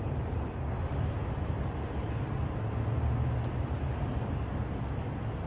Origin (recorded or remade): recorded